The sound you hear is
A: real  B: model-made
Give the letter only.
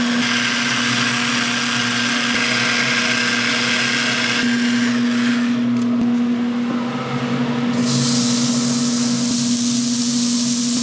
A